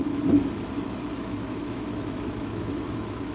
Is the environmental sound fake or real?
fake